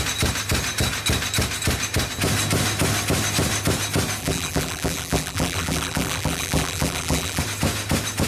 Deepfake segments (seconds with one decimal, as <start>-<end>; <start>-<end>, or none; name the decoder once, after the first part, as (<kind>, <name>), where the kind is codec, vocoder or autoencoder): 4.2-7.4 (vocoder, BigVGAN v2)